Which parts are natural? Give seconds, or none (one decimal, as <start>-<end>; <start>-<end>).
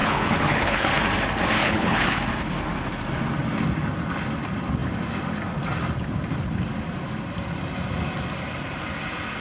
0.9-1.6; 2.2-9.4